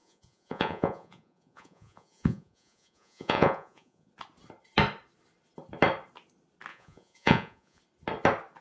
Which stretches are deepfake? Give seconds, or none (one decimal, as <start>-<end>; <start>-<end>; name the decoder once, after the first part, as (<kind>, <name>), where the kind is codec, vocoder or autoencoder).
0.0-4.1 (vocoder, Vocos); 6.7-7.8